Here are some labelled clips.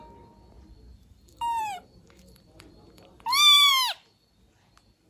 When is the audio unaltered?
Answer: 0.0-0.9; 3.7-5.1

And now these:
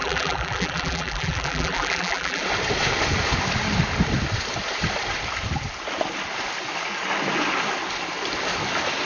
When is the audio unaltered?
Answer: 2.4-9.1

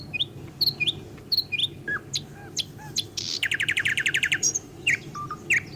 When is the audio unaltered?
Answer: 0.0-3.9; 5.0-5.8

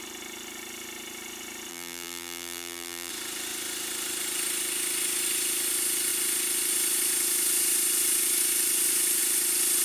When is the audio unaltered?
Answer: 0.0-1.7; 3.1-9.8